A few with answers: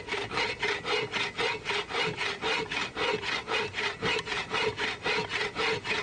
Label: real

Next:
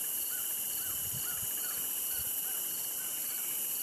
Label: real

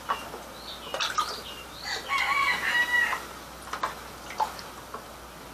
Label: real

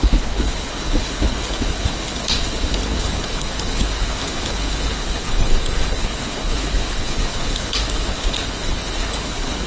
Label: fake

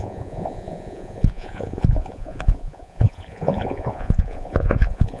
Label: fake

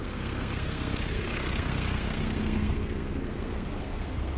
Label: fake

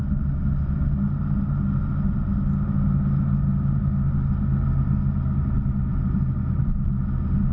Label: real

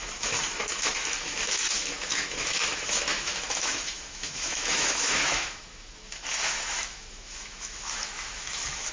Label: fake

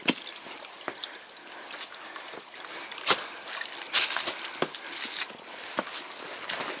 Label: real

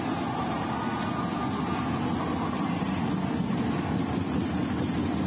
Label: real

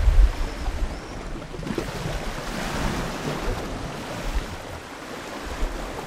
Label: fake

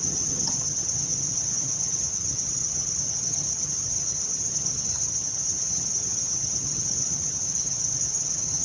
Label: fake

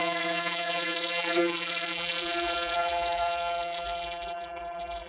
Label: fake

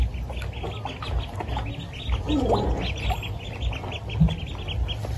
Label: real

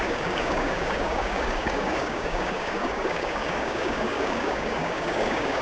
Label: fake